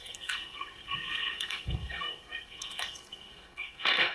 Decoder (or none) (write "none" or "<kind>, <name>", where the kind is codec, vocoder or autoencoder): codec, SNAC